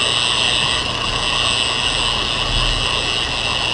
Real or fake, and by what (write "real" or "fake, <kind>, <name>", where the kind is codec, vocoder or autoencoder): real